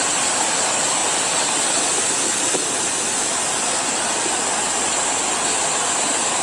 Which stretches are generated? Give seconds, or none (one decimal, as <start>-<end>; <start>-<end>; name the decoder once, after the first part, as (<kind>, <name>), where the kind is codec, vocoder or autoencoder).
none